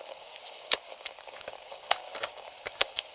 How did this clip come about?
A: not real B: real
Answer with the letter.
A